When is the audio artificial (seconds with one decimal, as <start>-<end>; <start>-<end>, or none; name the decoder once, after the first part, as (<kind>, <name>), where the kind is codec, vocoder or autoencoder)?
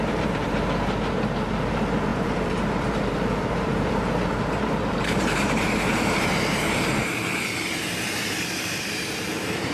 0.0-9.7 (vocoder, BigVGAN v2)